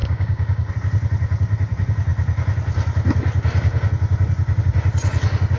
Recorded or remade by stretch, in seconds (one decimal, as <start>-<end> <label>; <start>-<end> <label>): 0.0-0.7 remade; 0.7-5.6 recorded